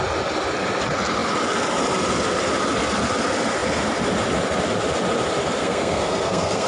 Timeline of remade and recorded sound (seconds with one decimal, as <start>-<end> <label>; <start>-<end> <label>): 0.0-5.6 recorded; 5.6-6.7 remade